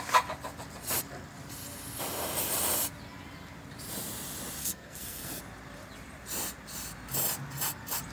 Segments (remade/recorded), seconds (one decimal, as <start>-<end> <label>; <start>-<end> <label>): 0.0-4.6 recorded; 4.6-5.4 remade; 5.4-8.1 recorded